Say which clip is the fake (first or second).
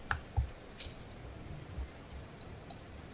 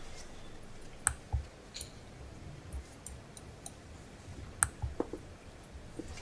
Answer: first